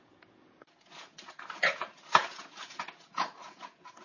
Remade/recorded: remade